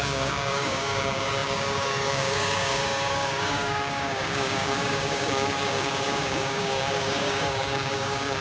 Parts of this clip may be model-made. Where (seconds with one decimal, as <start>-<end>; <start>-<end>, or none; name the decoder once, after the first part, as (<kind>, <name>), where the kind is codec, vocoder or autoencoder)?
0.0-8.4 (codec, DAC)